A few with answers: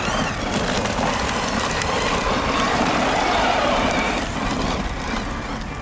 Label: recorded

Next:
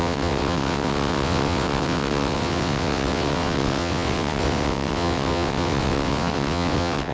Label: remade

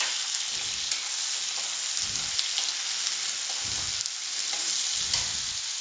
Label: recorded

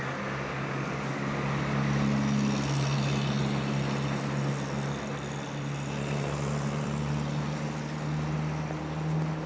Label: recorded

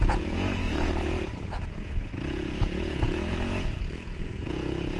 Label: remade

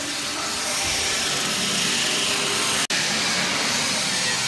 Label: recorded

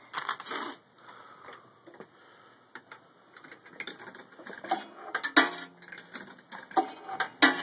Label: recorded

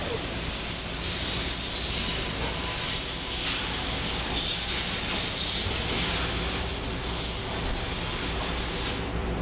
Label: recorded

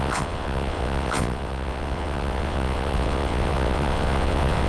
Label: remade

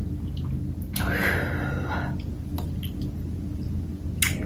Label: recorded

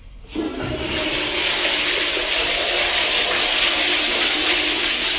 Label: recorded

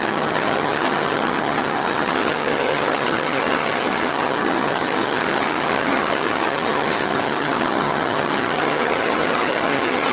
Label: remade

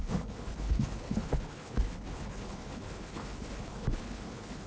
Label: remade